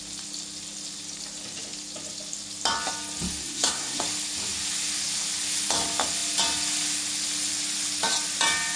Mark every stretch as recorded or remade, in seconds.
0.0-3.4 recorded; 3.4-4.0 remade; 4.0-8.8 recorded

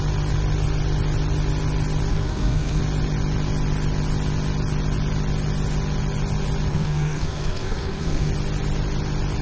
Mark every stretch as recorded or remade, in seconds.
0.0-2.1 recorded; 2.1-2.8 remade; 2.8-6.7 recorded; 6.7-8.3 remade; 8.3-9.4 recorded

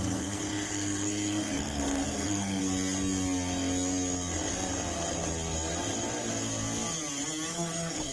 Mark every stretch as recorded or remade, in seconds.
0.0-2.6 remade; 2.6-7.5 recorded; 7.5-8.1 remade